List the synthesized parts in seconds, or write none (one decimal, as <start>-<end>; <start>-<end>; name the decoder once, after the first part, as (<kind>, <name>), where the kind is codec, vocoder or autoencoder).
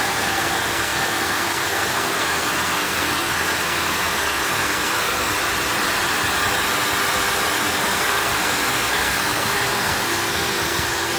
0.0-5.3 (codec, SNAC); 7.7-11.2